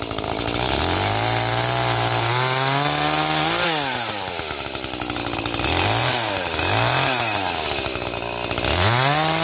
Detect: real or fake real